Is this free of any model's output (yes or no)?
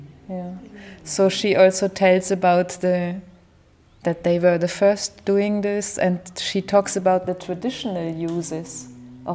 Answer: yes